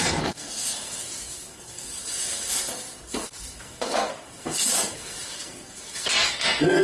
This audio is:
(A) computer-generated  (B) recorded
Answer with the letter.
A